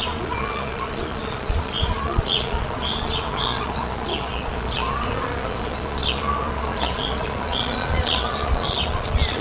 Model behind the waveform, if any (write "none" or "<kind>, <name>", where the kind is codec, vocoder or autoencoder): vocoder, Vocos